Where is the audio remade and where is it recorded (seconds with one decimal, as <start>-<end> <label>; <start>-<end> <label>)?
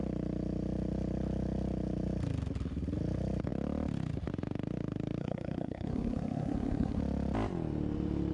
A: 0.0-5.2 recorded; 5.2-7.0 remade; 7.0-8.3 recorded